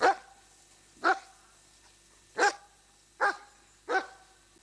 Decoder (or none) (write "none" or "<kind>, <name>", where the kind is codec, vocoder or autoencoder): none